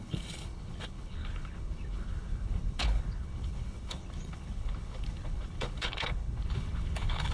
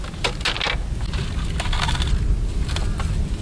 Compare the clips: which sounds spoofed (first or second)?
first